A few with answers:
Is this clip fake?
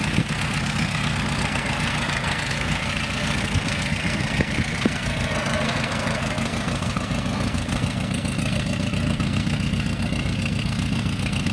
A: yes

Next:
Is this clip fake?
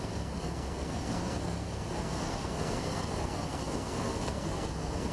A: yes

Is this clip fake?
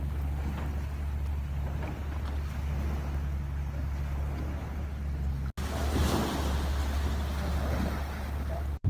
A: no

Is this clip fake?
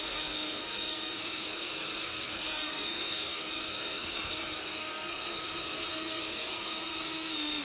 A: yes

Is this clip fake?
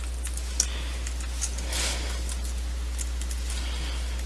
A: no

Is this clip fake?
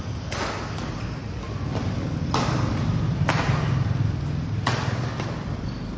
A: no